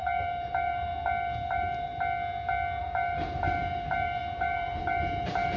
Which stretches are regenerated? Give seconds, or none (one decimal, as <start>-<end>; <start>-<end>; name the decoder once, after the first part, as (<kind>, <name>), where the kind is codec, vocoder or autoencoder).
0.0-0.9 (vocoder, BigVGAN v2); 1.5-1.9; 2.8-5.6